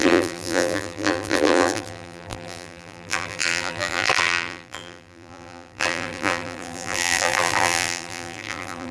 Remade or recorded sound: remade